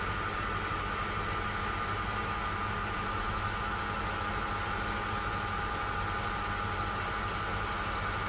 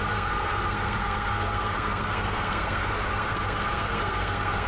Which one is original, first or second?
first